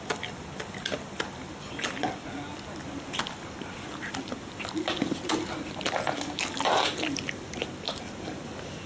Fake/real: real